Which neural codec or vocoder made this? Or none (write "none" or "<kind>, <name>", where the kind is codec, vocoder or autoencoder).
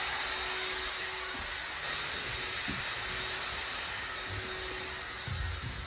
none